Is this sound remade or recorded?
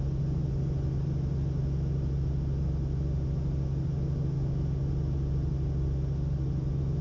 recorded